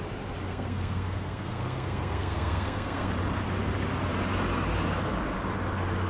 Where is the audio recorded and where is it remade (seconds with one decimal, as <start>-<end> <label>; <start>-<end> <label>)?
0.0-0.5 recorded; 0.5-3.1 remade; 3.1-6.1 recorded